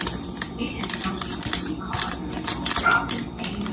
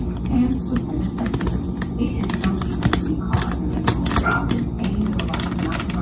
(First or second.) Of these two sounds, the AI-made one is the first